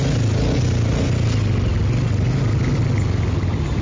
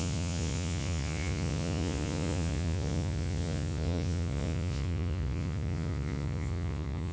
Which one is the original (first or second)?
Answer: first